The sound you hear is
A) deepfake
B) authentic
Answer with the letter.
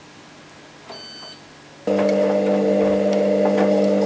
B